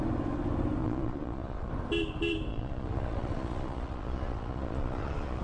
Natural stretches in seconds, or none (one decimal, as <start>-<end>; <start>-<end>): 0.0-0.8; 1.7-2.5